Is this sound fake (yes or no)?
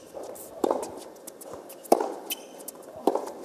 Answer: no